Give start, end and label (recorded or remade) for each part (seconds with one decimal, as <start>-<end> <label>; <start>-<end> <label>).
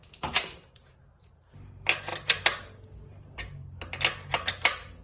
0.0-0.9 remade; 0.9-5.0 recorded